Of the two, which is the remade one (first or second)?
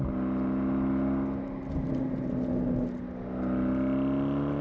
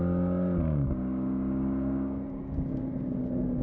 second